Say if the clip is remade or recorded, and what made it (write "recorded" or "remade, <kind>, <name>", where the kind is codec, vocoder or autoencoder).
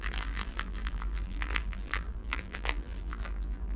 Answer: remade, vocoder, BigVGAN v2